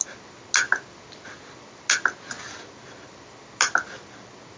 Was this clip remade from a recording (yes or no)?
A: no